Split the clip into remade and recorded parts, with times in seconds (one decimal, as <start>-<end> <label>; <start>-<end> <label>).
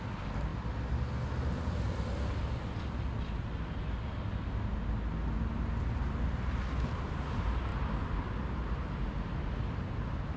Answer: 0.0-10.4 recorded